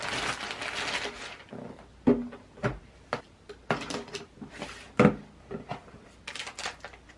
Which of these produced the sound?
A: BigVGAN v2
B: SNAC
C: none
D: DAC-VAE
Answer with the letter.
C